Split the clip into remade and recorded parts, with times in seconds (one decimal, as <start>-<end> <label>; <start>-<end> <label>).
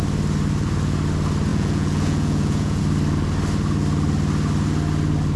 0.0-1.5 recorded; 1.5-2.8 remade; 2.8-5.4 recorded